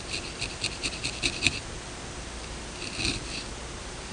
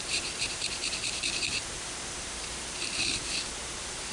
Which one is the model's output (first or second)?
second